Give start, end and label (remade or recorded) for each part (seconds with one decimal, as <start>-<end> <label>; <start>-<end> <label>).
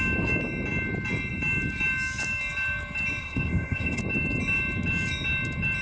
0.0-3.2 recorded; 3.2-4.0 remade; 4.0-5.8 recorded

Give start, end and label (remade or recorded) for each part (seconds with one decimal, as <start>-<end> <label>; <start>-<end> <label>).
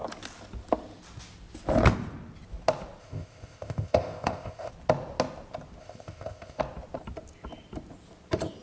0.0-3.0 recorded; 3.0-4.7 remade; 4.7-5.8 recorded; 5.8-6.6 remade; 6.6-8.6 recorded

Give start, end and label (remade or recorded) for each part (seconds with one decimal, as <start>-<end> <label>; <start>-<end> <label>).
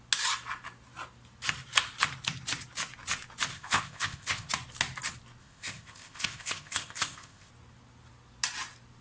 0.0-3.5 recorded; 3.5-4.5 remade; 4.5-5.4 recorded; 5.4-7.5 remade; 7.5-9.0 recorded